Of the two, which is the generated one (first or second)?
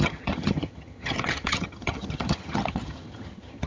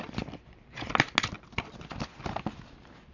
first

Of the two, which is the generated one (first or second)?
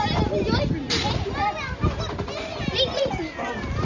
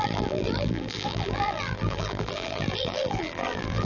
second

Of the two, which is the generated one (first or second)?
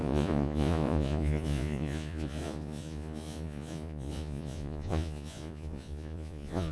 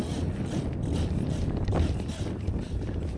first